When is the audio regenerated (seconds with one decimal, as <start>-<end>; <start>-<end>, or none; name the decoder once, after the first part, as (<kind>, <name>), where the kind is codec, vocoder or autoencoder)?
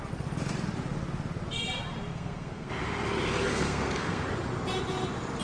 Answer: 2.1-2.7 (codec, SNAC); 3.5-4.2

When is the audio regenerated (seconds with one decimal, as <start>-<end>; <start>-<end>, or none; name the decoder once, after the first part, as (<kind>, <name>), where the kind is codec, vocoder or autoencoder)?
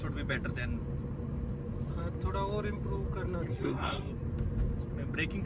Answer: 3.5-4.1 (codec, SNAC)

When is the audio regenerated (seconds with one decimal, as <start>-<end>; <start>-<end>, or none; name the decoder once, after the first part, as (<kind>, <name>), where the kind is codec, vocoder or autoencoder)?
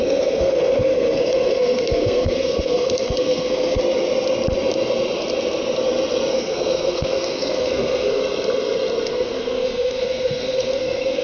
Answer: 0.0-3.8 (codec, SNAC); 6.3-8.2; 9.1-11.2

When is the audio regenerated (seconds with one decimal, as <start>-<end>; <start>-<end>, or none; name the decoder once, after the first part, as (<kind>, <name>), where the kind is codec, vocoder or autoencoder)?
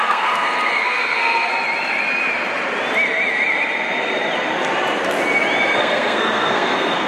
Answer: 0.0-1.5 (codec, SNAC); 5.8-7.1